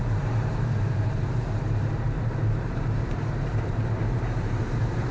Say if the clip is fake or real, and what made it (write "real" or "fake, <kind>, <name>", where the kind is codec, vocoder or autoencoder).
fake, vocoder, BigVGAN v2